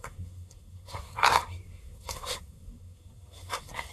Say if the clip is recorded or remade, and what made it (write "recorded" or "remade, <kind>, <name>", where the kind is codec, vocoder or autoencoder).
remade, codec, SNAC